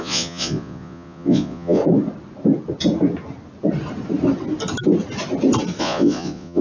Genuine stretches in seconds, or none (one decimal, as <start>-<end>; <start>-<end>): 1.8-5.8